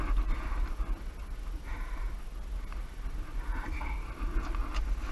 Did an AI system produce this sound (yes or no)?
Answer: no